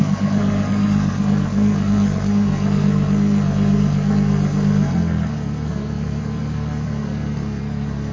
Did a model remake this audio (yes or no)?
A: yes